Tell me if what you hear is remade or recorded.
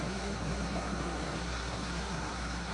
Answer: remade